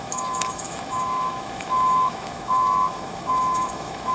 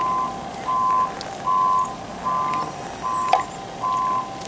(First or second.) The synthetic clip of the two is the first